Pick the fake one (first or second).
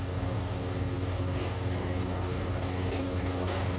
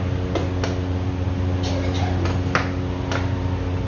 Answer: first